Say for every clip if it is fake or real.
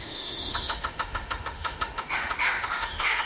fake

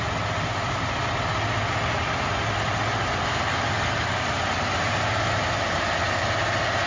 real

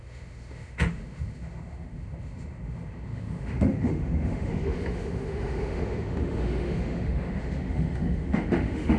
fake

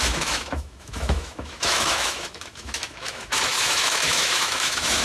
fake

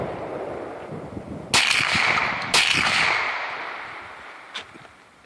real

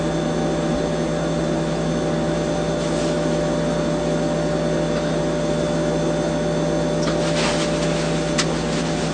real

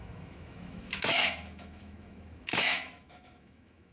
fake